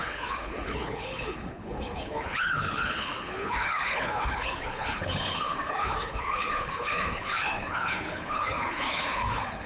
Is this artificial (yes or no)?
yes